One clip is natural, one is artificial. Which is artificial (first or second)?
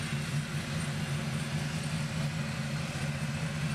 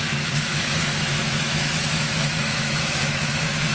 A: second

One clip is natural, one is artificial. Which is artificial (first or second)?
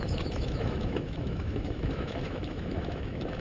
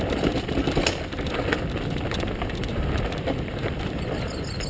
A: first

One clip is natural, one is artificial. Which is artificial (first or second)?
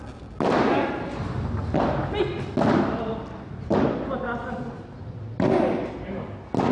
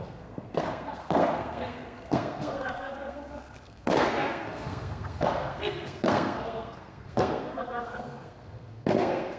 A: second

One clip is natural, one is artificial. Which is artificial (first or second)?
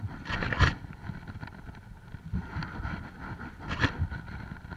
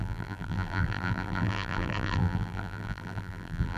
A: second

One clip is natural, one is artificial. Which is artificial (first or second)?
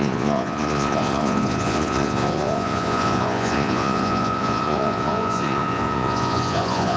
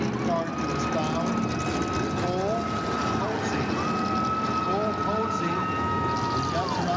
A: first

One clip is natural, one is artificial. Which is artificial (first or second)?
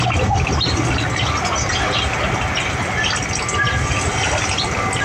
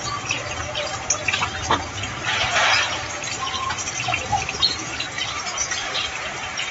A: second